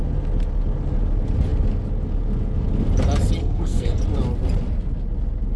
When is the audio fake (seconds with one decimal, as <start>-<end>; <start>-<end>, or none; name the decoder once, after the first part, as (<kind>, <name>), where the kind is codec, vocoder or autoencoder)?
3.4-4.0 (codec, SNAC)